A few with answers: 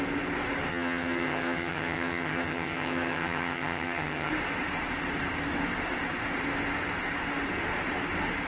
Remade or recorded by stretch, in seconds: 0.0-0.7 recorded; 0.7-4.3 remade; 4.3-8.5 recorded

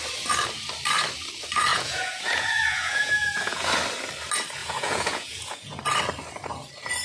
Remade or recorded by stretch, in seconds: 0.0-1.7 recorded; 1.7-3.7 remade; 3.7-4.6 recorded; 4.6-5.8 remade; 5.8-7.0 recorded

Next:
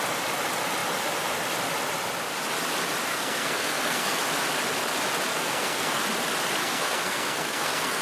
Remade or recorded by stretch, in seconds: 0.0-3.1 recorded; 3.1-4.2 remade; 4.2-5.3 recorded; 5.3-6.0 remade; 6.0-6.6 recorded; 6.6-8.0 remade

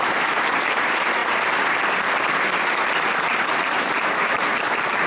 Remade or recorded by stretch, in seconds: 0.0-1.2 remade; 1.2-3.2 recorded; 3.2-5.1 remade

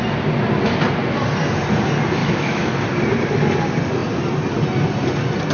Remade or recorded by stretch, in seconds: 0.0-2.2 recorded; 2.2-2.7 remade; 2.7-5.5 recorded

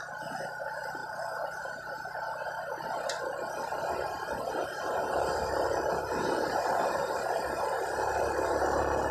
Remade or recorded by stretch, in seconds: 0.0-1.0 recorded; 1.0-2.1 remade; 2.1-4.6 recorded; 4.6-9.1 remade

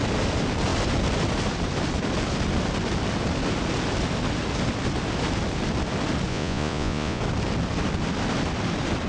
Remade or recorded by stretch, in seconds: 0.0-6.3 recorded; 6.3-7.2 remade; 7.2-9.1 recorded

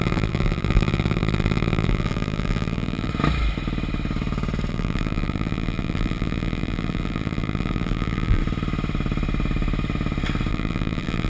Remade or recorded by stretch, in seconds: 0.0-3.1 remade; 3.1-4.7 recorded; 4.7-8.4 remade; 8.4-10.5 recorded; 10.5-11.3 remade